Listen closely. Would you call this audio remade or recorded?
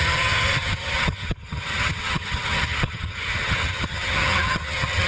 remade